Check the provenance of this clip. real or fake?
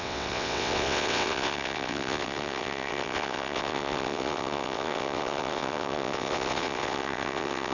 fake